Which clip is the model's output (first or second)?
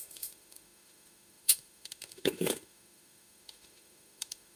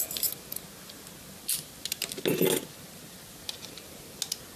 first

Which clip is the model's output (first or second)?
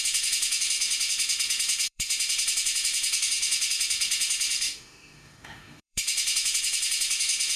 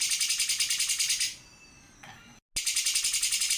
first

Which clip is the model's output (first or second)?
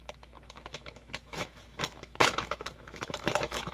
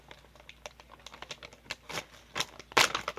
first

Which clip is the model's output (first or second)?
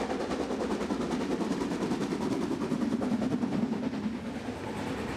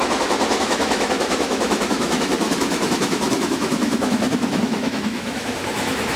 second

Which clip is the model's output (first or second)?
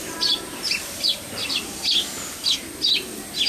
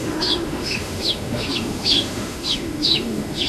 second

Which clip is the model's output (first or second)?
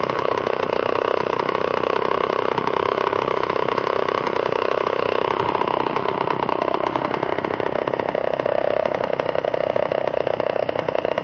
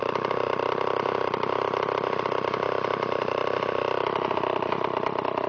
first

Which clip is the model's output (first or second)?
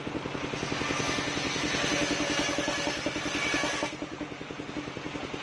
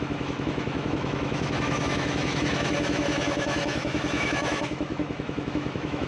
second